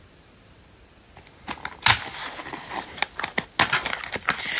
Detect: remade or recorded recorded